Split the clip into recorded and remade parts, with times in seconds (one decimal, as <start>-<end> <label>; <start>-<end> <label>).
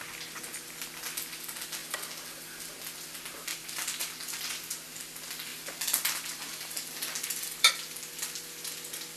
0.0-1.8 recorded; 1.8-2.6 remade; 2.6-3.5 recorded; 3.5-4.5 remade; 4.5-5.5 recorded; 5.5-7.7 remade; 7.7-9.2 recorded